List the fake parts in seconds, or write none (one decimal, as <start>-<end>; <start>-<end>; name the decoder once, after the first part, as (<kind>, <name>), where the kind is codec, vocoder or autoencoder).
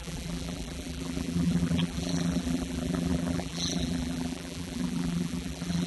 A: 0.0-5.9 (vocoder, BigVGAN v2)